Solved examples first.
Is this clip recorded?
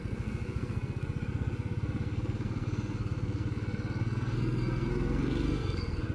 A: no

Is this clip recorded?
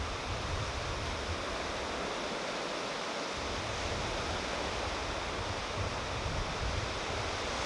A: yes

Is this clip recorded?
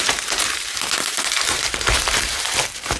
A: no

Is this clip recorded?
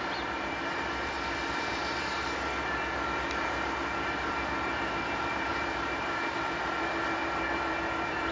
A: no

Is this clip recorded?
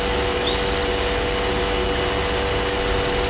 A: yes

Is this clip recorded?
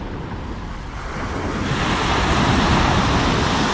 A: yes